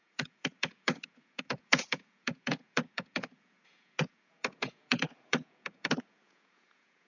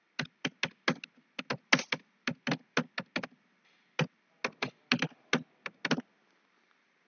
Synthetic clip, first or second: first